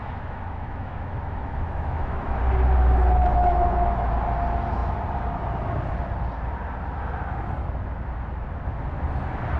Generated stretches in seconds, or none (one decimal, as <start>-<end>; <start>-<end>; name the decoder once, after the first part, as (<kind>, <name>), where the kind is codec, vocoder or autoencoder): 0.0-2.4 (autoencoder, DAC-VAE); 3.2-4.1